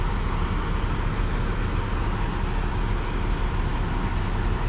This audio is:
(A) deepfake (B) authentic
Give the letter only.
B